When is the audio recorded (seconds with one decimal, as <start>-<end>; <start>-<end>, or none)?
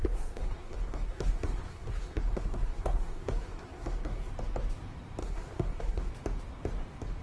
4.3-5.2; 6.1-7.2